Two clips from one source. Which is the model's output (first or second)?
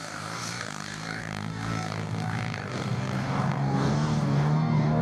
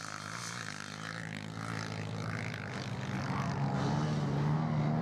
first